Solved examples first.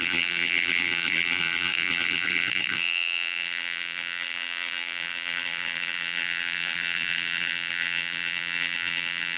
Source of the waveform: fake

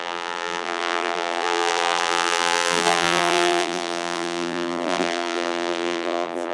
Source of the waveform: fake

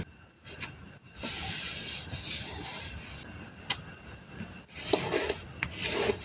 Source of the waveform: real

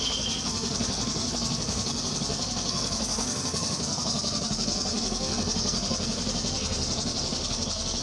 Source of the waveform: fake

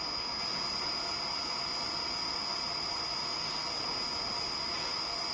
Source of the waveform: real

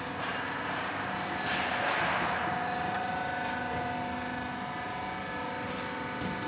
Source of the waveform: real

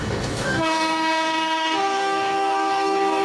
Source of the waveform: fake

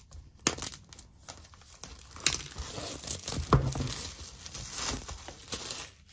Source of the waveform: real